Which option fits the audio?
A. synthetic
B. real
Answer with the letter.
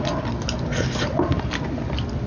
B